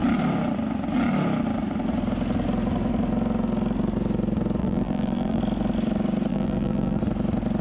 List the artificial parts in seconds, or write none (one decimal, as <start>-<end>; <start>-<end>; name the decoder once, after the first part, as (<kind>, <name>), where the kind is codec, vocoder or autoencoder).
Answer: 4.6-5.4 (vocoder, BigVGAN v2); 6.3-7.0